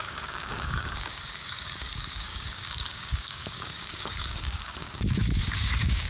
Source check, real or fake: fake